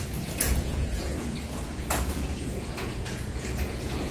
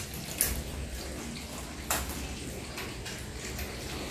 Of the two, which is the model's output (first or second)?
first